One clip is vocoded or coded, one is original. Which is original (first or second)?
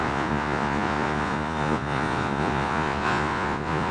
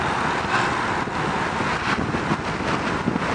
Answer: second